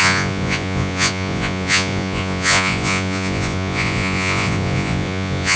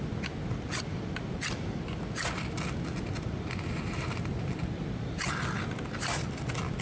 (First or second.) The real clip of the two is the second